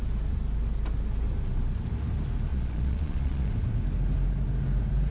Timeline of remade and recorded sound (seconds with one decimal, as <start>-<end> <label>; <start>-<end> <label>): 0.0-2.5 recorded; 2.5-3.5 remade; 3.5-5.1 recorded